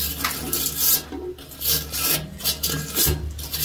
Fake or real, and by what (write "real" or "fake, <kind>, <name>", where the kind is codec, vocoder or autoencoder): real